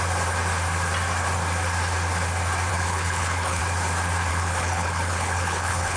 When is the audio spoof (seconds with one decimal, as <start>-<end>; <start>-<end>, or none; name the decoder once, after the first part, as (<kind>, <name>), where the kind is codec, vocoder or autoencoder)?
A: 2.7-3.6 (codec, HILCodec); 4.3-6.0